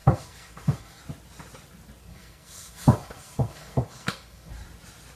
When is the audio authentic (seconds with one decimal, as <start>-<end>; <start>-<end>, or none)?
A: 1.0-2.0; 4.5-5.2